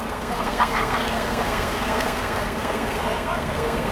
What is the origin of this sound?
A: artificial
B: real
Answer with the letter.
A